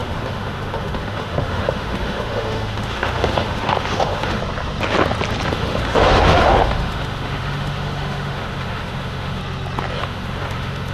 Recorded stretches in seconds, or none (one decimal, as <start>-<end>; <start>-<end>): 4.4-5.5; 9.4-10.0